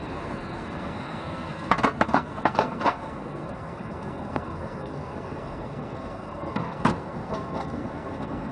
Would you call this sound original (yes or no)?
no